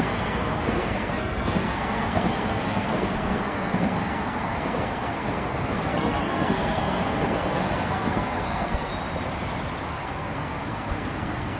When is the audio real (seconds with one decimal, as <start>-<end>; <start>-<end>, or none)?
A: 8.9-9.9